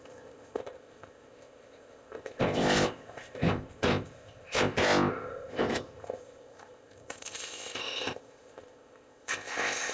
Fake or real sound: fake